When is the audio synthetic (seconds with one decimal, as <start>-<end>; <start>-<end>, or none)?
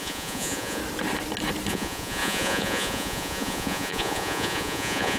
0.0-0.8; 1.7-5.2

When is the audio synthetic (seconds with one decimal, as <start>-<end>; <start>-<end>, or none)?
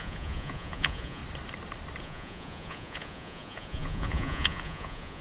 0.0-1.2; 2.0-5.2